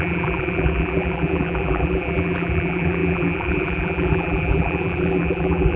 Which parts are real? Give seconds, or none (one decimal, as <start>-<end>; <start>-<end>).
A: none